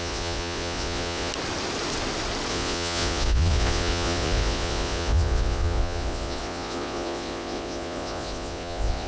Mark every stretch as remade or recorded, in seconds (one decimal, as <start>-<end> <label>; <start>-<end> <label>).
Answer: 0.0-1.3 remade; 1.3-2.5 recorded; 2.5-9.1 remade